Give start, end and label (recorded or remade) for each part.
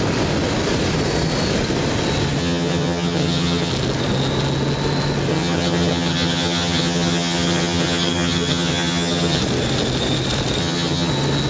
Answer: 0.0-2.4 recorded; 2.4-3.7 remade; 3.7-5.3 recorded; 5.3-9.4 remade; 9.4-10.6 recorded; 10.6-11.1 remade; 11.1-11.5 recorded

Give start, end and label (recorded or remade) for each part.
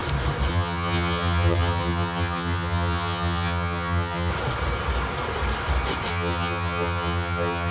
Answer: 0.0-0.5 recorded; 0.5-4.3 remade; 4.3-6.1 recorded; 6.1-7.7 remade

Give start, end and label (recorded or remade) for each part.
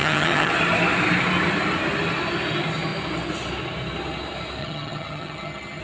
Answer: 0.0-0.5 remade; 0.5-4.6 recorded; 4.6-5.8 remade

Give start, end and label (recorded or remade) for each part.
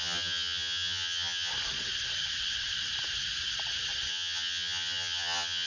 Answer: 0.0-1.5 remade; 1.5-4.1 recorded; 4.1-5.7 remade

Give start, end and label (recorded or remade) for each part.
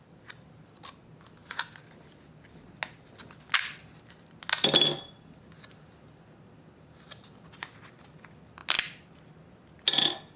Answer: 0.0-10.4 recorded